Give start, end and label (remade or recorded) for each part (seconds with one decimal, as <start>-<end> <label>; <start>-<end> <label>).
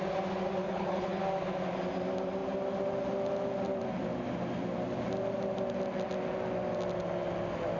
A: 0.0-0.6 recorded; 0.6-1.2 remade; 1.2-7.8 recorded